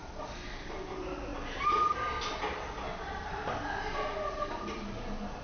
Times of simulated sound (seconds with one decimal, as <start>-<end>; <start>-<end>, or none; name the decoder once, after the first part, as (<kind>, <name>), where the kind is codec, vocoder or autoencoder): 0.0-0.9 (vocoder, BigVGAN v2)